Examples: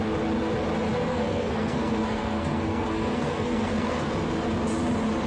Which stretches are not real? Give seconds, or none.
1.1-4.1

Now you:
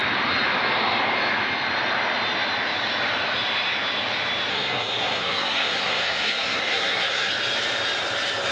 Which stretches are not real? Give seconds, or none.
4.5-7.3

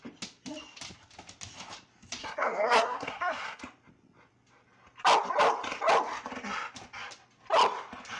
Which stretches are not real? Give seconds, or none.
2.2-3.6

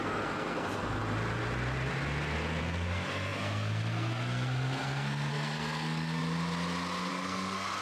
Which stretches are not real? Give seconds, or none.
0.0-1.0; 2.6-6.2; 7.1-7.8

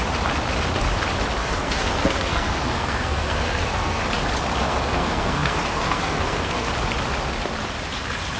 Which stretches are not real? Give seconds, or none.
1.4-4.0; 4.6-6.7